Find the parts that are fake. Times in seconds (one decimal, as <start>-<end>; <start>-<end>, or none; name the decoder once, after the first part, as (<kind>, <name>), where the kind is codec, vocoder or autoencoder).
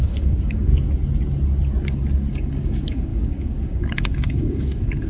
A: 0.0-0.7 (codec, DAC); 2.3-5.1